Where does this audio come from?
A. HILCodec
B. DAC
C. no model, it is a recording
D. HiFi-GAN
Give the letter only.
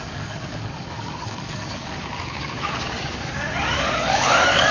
B